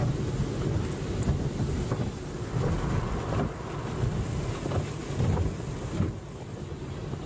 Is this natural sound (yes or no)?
yes